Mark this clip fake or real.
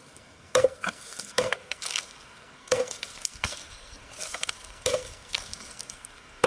fake